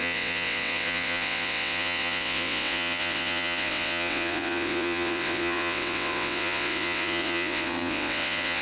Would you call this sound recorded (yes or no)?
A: no